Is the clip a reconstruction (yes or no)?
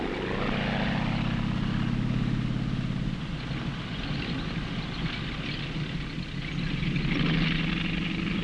no